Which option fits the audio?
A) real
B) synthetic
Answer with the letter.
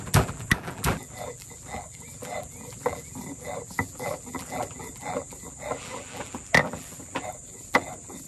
B